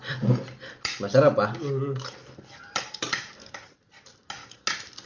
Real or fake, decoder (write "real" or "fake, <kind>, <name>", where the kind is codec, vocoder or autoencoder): real